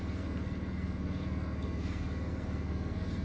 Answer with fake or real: fake